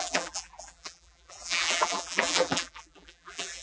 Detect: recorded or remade remade